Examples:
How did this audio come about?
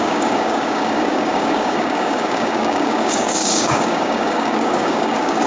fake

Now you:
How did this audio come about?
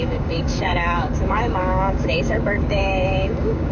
fake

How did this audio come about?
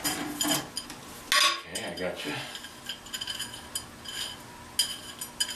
real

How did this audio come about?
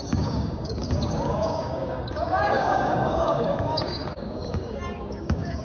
fake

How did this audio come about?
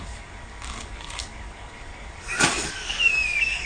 fake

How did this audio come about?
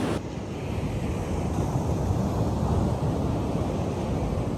real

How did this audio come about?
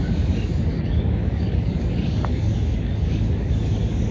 fake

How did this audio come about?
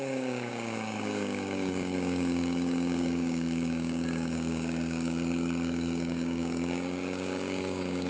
fake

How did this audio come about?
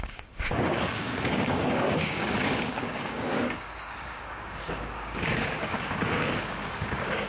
fake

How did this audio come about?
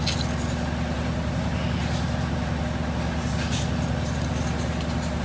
real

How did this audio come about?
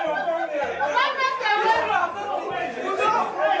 real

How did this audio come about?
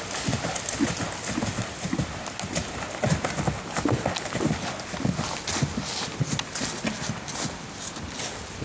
real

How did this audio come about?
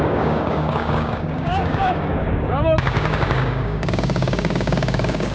fake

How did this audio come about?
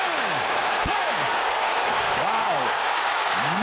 fake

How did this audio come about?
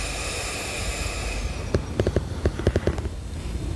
real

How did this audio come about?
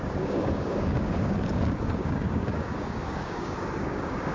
fake